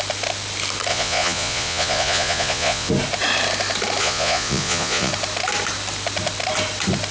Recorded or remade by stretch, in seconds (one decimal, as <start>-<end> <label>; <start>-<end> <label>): 0.0-0.9 recorded; 0.9-2.9 remade; 2.9-4.0 recorded; 4.0-5.1 remade; 5.1-7.1 recorded